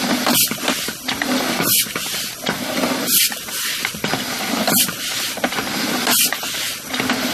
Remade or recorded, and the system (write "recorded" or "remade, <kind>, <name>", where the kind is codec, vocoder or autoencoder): recorded